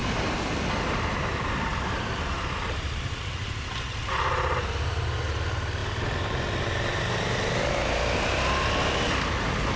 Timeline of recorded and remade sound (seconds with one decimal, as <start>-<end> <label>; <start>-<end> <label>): 0.0-3.6 remade; 3.6-9.8 recorded